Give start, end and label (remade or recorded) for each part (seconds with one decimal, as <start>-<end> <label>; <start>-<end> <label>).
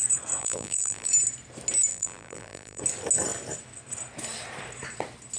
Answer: 0.0-0.4 recorded; 0.4-1.1 remade; 1.1-1.9 recorded; 1.9-2.8 remade; 2.8-5.4 recorded